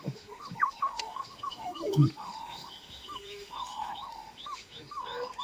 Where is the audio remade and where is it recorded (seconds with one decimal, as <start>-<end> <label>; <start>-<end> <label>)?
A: 0.0-5.4 remade